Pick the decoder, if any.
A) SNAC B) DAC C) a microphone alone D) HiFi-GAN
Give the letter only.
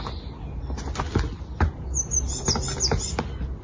C